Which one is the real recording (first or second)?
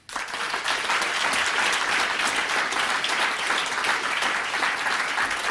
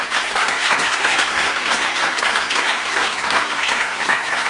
first